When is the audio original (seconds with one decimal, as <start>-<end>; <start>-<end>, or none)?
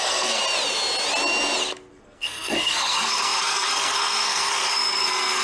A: 0.4-1.9